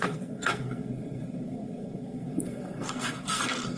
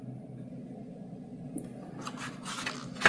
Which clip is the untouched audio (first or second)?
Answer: second